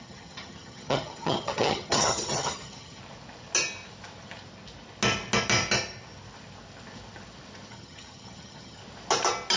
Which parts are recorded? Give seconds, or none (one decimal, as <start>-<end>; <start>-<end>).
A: 3.0-7.7; 8.8-9.6